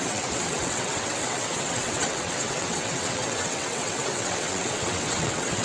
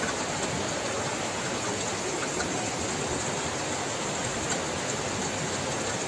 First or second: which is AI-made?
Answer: first